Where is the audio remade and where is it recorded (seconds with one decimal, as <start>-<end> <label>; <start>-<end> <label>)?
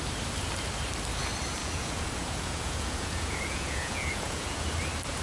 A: 0.0-1.6 recorded; 1.6-4.7 remade; 4.7-5.2 recorded